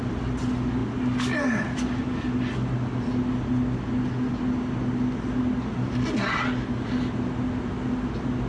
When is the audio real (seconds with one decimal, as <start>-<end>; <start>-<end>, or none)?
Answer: 0.0-8.5